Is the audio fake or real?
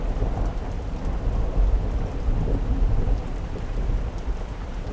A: real